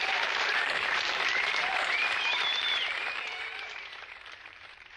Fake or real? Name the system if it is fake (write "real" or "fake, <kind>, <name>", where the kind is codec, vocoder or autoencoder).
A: fake, vocoder, BigVGAN v2